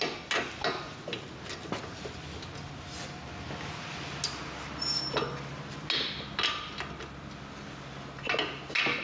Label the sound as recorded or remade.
recorded